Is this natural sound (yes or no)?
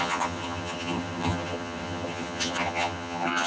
no